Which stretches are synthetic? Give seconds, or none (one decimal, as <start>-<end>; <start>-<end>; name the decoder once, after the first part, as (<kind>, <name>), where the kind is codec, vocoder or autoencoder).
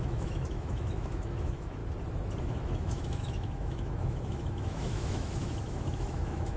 0.0-1.8 (autoencoder, DAC-VAE); 2.4-6.6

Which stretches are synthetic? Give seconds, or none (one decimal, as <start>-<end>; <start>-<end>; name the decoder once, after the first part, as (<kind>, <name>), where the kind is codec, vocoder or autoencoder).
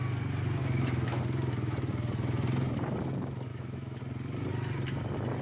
0.6-1.2 (autoencoder, DAC-VAE); 3.5-4.0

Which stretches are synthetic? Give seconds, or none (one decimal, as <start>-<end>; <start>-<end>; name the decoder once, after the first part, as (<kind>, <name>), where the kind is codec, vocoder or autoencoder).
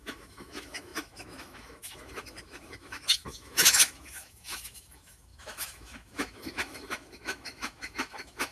0.0-8.5 (autoencoder, DAC-VAE)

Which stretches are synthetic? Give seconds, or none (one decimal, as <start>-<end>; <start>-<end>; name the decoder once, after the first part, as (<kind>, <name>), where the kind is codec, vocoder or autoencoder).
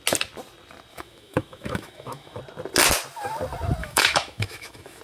0.9-2.4 (autoencoder, DAC-VAE); 3.8-5.0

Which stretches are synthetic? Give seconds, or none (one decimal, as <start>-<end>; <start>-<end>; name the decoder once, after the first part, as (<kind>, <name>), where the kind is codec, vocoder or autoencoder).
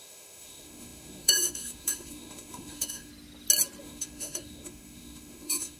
0.0-3.1 (autoencoder, DAC-VAE); 3.8-5.8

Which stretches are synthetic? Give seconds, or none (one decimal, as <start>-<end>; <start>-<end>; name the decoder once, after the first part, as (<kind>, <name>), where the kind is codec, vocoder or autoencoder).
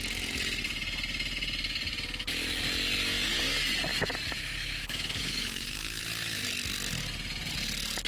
3.9-6.0 (autoencoder, DAC-VAE)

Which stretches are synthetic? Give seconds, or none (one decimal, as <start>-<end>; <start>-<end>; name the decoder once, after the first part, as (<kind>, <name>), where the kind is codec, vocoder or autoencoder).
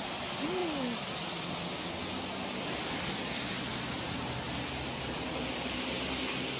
none